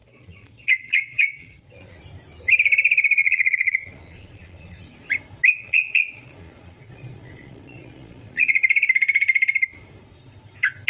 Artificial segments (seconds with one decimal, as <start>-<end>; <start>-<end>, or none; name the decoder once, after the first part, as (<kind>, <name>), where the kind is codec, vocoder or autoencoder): 0.0-2.0 (vocoder, Vocos); 3.2-4.9; 5.6-8.6